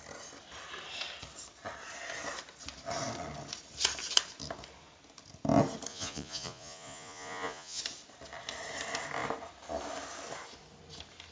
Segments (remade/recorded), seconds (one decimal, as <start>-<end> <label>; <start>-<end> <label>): 0.0-5.9 recorded; 5.9-7.8 remade; 7.8-11.3 recorded